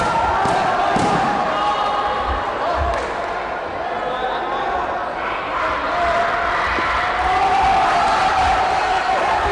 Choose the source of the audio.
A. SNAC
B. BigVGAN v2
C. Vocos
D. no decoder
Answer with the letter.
D